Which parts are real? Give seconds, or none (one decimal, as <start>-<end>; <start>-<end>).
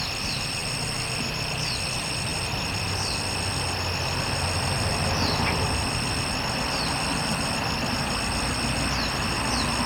0.0-9.9